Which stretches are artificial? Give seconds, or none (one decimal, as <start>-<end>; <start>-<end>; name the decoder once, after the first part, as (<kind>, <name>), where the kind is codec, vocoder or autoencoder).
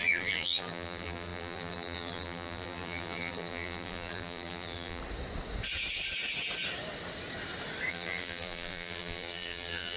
0.0-5.0 (vocoder, BigVGAN v2); 7.9-10.0